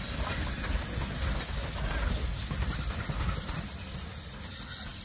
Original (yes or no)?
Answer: yes